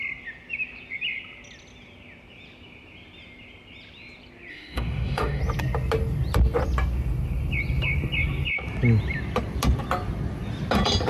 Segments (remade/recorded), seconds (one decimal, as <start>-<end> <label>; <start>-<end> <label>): 0.0-4.5 recorded; 4.5-5.4 remade; 5.4-11.1 recorded